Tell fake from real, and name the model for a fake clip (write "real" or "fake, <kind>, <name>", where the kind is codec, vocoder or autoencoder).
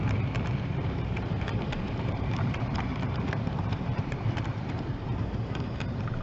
fake, vocoder, BigVGAN v2